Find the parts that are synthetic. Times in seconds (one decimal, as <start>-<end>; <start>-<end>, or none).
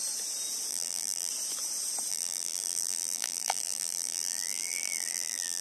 0.7-1.3; 2.1-5.6